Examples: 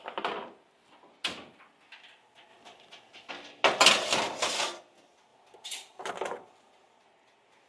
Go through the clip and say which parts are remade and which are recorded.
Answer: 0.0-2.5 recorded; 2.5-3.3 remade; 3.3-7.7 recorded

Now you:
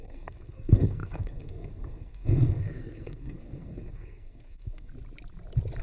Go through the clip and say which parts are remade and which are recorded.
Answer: 0.0-4.9 remade; 4.9-5.8 recorded